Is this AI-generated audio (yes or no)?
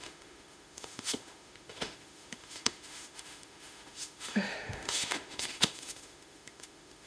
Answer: yes